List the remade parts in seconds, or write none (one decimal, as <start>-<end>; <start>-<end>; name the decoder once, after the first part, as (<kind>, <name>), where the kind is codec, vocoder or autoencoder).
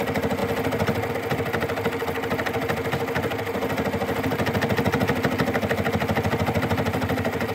none